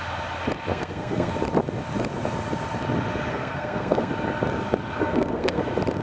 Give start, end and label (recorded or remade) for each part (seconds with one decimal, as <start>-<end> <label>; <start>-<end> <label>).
0.0-0.7 recorded; 0.7-1.3 remade; 1.3-3.3 recorded; 3.3-4.1 remade; 4.1-5.0 recorded; 5.0-5.6 remade; 5.6-6.0 recorded